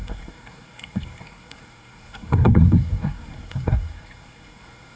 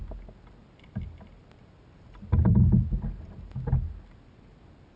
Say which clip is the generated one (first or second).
first